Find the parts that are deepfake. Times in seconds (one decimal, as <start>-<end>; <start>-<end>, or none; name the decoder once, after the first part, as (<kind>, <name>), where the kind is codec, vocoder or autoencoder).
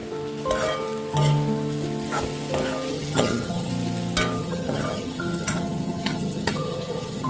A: 2.9-3.7 (vocoder, HiFi-GAN); 4.4-7.3